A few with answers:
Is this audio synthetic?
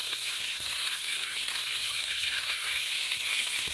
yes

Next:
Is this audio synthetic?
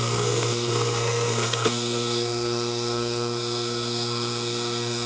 yes